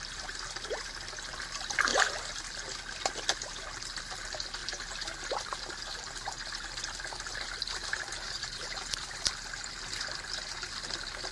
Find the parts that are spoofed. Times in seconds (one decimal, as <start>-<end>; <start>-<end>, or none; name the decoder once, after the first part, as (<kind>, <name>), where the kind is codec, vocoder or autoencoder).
4.6-6.3 (vocoder, BigVGAN v2); 7.8-9.2